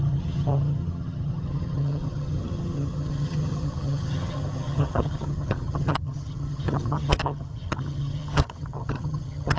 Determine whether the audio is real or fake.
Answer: fake